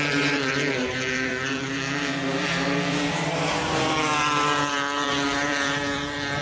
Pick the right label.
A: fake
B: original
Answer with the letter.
A